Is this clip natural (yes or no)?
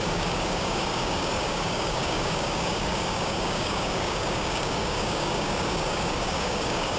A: no